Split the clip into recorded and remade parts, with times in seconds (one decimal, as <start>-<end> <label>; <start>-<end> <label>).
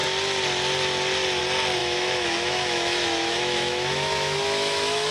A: 0.0-1.8 recorded; 1.8-5.1 remade